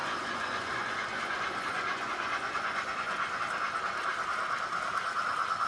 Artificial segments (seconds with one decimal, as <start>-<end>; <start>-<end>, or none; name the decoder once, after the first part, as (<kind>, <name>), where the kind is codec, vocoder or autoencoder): 0.0-3.4 (vocoder, Vocos)